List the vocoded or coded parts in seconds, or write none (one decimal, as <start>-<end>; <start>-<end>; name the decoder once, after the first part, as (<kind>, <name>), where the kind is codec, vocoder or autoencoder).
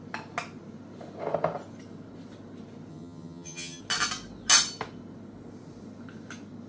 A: 2.9-3.8 (vocoder, HiFi-GAN)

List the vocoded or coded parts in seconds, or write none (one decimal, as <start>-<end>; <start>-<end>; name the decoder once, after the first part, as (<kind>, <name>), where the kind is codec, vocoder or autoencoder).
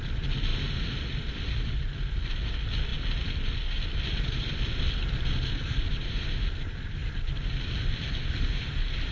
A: none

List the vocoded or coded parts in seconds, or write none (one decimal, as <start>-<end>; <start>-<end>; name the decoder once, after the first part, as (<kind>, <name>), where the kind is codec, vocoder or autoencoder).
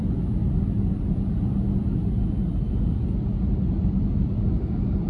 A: none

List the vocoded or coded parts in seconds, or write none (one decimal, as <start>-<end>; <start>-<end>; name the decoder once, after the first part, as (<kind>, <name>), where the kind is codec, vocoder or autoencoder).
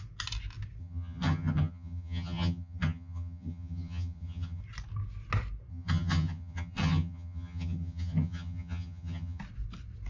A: 0.8-4.6 (vocoder, HiFi-GAN); 5.7-9.4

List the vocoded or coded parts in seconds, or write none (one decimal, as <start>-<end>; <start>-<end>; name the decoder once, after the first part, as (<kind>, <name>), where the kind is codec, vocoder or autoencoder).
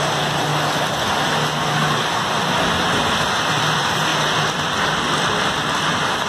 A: 0.0-0.5 (vocoder, BigVGAN v2); 3.5-6.3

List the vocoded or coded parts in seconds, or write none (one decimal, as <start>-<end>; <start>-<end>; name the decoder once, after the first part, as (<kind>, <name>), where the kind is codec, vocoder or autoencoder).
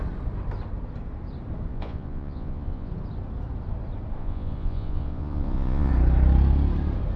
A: 1.7-2.9 (vocoder, Vocos); 4.2-5.9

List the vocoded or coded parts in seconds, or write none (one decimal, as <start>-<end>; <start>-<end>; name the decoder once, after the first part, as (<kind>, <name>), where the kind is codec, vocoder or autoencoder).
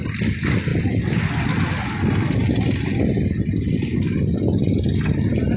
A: none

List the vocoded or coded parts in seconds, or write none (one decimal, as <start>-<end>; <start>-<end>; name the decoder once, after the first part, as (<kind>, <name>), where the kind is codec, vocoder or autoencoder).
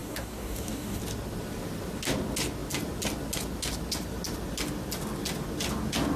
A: 0.0-1.0 (codec, DAC)